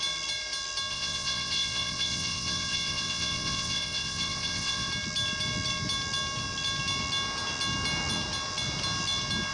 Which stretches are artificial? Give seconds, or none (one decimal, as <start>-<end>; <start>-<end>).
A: 0.9-4.9